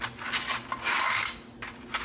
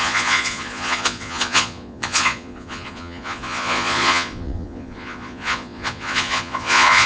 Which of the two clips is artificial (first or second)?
second